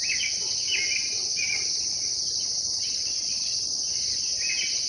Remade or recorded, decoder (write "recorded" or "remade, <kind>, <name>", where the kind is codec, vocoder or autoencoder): recorded